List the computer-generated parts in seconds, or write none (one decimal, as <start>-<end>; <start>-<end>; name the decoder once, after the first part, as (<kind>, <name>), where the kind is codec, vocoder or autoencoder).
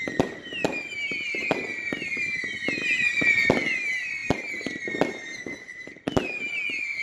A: none